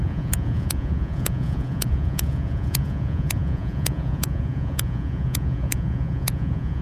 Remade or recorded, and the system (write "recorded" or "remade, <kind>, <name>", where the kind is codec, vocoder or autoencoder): remade, vocoder, Vocos